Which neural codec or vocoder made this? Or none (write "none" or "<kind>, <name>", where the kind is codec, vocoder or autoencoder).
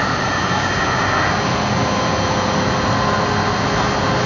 none